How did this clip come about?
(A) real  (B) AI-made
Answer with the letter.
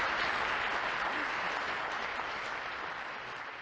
A